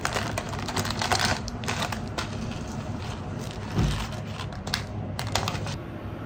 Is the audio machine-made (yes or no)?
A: yes